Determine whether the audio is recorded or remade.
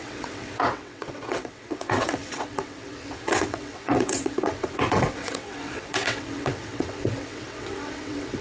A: remade